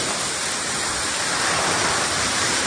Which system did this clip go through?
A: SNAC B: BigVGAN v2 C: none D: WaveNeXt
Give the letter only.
C